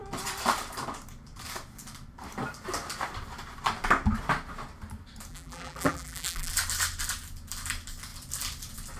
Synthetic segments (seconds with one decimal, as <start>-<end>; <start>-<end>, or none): 5.3-6.5